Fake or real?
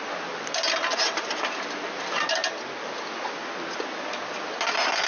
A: real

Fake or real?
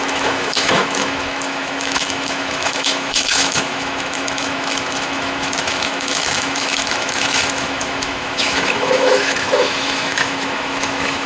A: fake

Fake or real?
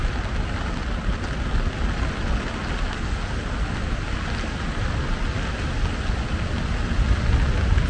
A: real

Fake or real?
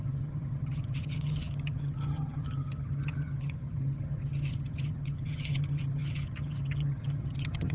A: fake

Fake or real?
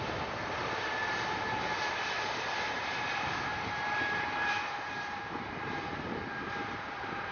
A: fake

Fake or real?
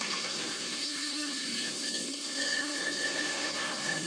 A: fake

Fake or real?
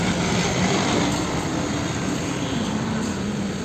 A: real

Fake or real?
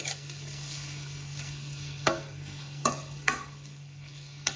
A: fake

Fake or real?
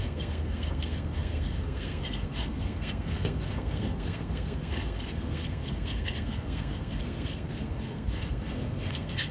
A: fake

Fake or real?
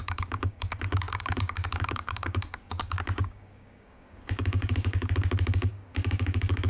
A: fake